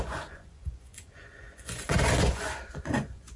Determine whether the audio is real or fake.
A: fake